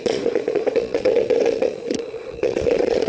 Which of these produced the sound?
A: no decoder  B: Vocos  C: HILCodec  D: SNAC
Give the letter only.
B